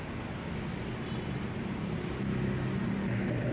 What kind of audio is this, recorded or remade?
recorded